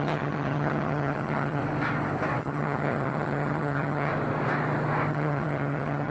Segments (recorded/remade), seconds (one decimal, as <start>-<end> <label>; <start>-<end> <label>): 0.0-1.6 remade; 1.6-2.4 recorded; 2.4-4.1 remade; 4.1-5.1 recorded; 5.1-6.1 remade